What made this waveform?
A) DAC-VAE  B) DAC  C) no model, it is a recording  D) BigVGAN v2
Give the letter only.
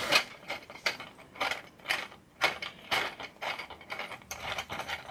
D